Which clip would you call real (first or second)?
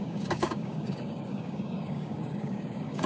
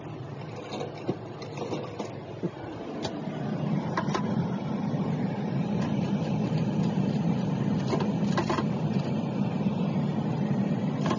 second